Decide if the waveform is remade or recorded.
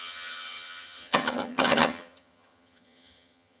remade